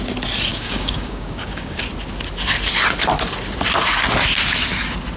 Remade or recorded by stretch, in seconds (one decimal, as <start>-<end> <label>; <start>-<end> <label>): 0.0-0.5 recorded; 0.5-1.8 remade; 1.8-5.2 recorded